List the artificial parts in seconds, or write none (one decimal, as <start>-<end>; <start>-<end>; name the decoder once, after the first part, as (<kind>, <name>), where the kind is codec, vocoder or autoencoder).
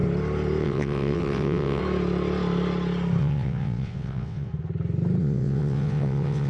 0.6-1.8 (vocoder, WaveNeXt); 3.2-4.5; 5.2-6.5